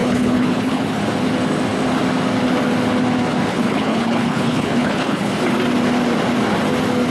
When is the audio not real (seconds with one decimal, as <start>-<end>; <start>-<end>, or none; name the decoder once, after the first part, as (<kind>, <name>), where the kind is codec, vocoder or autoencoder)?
0.0-1.0 (codec, HILCodec); 3.5-5.3